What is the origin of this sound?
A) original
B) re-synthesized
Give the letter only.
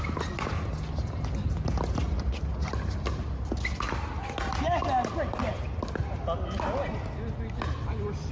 A